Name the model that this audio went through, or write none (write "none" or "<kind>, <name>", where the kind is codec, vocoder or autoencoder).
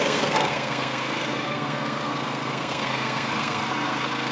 codec, SNAC